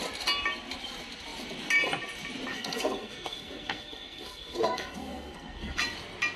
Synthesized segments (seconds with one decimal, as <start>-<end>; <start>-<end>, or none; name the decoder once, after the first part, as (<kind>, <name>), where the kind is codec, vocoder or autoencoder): 2.5-5.8 (codec, SNAC)